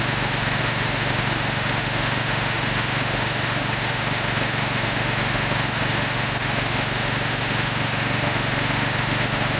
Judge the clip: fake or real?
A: fake